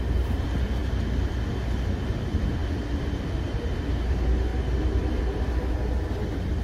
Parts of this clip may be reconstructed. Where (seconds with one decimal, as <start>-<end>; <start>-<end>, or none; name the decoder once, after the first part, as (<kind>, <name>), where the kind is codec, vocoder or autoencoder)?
none